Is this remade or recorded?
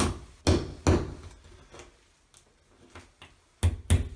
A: recorded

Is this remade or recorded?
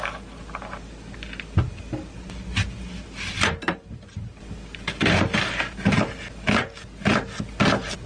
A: recorded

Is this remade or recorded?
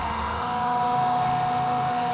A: remade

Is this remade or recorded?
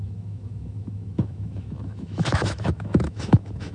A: remade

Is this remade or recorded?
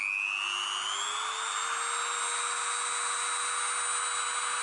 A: recorded